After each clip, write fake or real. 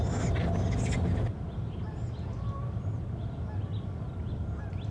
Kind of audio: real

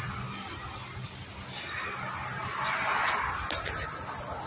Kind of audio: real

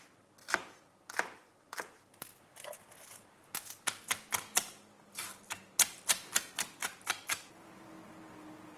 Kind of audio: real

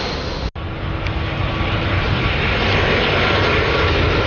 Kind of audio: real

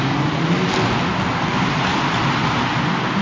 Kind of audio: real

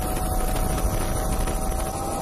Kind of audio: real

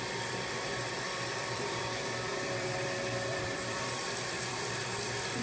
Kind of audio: fake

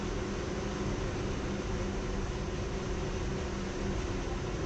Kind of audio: real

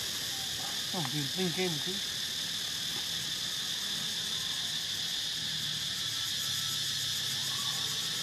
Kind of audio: real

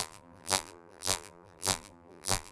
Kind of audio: fake